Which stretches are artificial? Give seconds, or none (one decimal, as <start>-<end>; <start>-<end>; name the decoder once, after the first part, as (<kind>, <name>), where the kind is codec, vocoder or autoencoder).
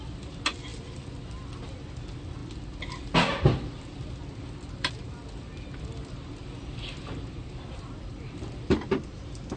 none